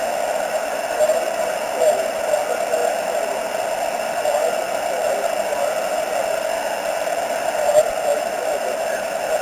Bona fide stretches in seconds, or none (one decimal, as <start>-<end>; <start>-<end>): 0.0-9.4